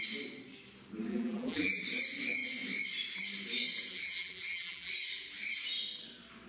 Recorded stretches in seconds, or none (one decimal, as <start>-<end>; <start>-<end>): 0.0-1.1; 1.8-3.9; 4.9-6.5